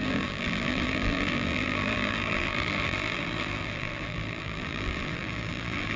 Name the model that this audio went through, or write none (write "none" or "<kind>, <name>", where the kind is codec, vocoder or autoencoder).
vocoder, BigVGAN v2